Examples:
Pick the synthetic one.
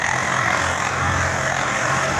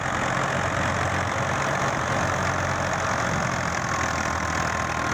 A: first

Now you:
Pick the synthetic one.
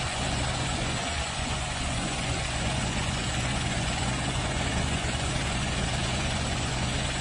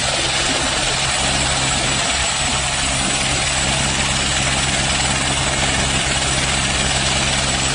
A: first